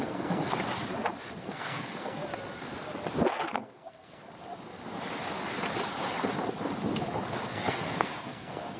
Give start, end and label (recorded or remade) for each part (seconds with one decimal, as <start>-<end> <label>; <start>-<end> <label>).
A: 0.0-0.4 remade; 0.4-1.4 recorded; 1.4-2.2 remade; 2.2-3.3 recorded; 3.3-4.2 remade; 4.2-7.5 recorded; 7.5-8.8 remade